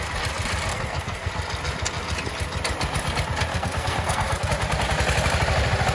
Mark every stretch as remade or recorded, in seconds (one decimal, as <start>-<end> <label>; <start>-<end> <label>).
0.0-0.7 recorded; 0.7-1.3 remade; 1.3-3.5 recorded; 3.5-4.5 remade; 4.5-5.9 recorded